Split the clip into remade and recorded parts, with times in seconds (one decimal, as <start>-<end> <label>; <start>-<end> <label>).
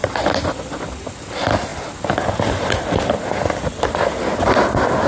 0.0-5.1 recorded